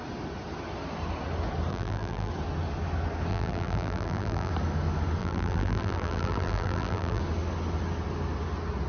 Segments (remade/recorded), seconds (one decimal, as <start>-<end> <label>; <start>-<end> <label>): 0.0-1.7 recorded; 1.7-2.3 remade; 2.3-3.3 recorded; 3.3-4.5 remade; 4.5-5.2 recorded; 5.2-7.2 remade; 7.2-8.9 recorded

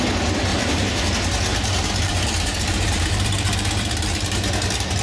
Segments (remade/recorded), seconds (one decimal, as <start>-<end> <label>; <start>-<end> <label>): 0.0-0.5 recorded; 0.5-1.1 remade; 1.1-1.5 recorded; 1.5-4.5 remade; 4.5-5.0 recorded

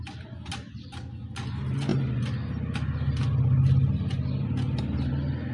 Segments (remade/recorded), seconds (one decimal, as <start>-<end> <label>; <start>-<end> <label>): 0.0-5.5 recorded

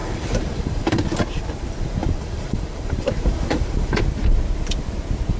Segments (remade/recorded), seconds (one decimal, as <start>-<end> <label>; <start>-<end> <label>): 0.0-1.0 remade; 1.0-2.0 recorded; 2.0-4.0 remade; 4.0-5.4 recorded

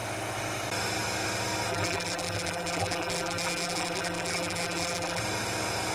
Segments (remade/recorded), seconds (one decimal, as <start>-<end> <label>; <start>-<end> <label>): 0.0-1.7 recorded; 1.7-5.2 remade; 5.2-5.9 recorded

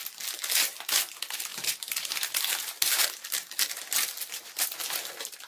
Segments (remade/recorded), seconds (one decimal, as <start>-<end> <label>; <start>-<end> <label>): 0.0-1.5 recorded; 1.5-4.8 remade; 4.8-5.5 recorded